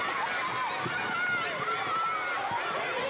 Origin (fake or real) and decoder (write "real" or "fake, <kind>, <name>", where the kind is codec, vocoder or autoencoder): real